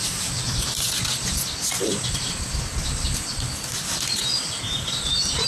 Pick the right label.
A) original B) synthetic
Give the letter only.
A